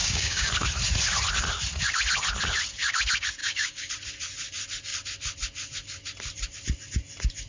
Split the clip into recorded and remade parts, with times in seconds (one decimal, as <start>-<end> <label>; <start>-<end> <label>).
0.0-0.5 remade; 0.5-3.4 recorded; 3.4-3.9 remade; 3.9-7.5 recorded